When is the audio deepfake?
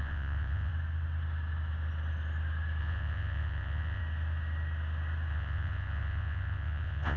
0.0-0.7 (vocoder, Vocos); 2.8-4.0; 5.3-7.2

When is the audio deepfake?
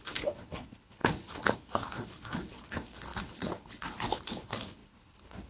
0.0-5.5 (codec, HILCodec)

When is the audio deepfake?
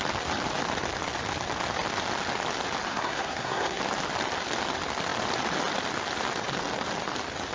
2.9-3.8 (codec, SNAC)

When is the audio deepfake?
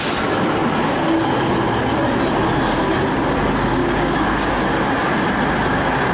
3.8-4.5 (codec, DAC)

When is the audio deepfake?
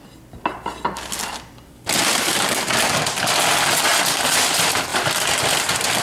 none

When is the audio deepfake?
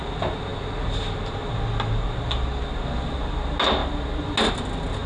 none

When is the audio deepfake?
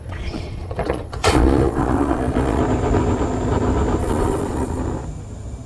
0.0-2.6 (vocoder, Vocos); 4.0-4.8